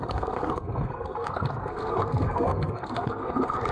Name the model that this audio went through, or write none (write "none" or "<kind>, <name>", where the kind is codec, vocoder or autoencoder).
codec, SNAC